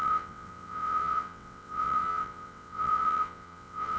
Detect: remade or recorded remade